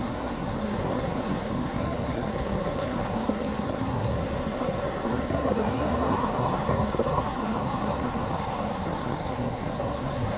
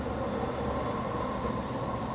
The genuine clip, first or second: second